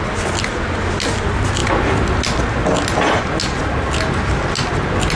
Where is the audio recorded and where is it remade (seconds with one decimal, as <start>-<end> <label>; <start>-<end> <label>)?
0.0-5.2 recorded